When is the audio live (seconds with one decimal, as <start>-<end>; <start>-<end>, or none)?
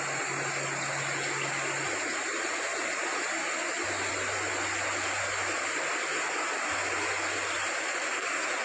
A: 0.0-8.6